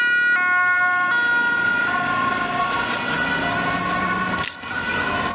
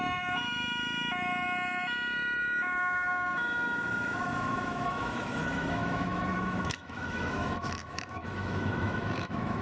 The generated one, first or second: second